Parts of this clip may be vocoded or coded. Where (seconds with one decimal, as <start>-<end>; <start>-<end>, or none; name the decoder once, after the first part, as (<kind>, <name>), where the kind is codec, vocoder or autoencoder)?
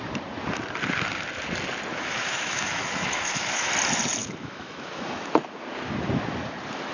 1.9-3.7 (autoencoder, DAC-VAE); 4.2-5.3